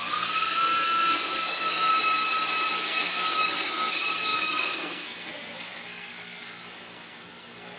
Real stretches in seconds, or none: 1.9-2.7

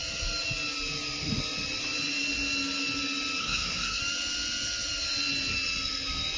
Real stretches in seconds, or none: 0.0-3.4; 4.0-6.4

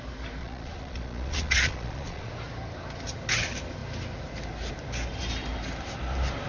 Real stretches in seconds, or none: 0.0-0.4; 2.3-6.5

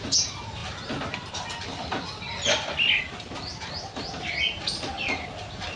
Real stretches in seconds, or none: 0.0-5.8

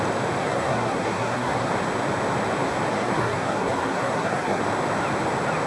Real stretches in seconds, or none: 0.0-0.4; 1.7-2.9; 4.6-5.7

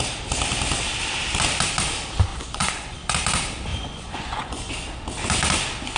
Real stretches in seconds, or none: 0.0-2.3; 3.1-3.7; 4.7-6.0